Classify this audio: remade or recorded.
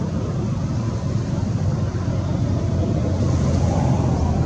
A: recorded